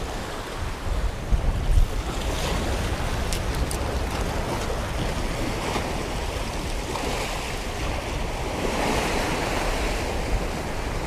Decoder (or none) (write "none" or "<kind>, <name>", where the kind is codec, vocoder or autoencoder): none